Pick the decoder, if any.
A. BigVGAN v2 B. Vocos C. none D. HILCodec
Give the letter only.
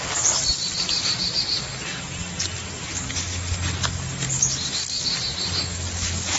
C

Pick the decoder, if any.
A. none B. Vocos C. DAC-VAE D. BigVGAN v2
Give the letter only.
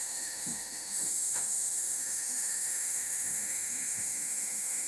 C